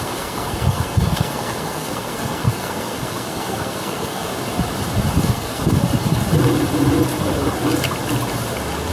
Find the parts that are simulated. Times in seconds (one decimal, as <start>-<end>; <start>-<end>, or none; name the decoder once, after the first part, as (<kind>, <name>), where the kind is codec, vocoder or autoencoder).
0.0-4.3 (codec, SNAC); 5.2-5.8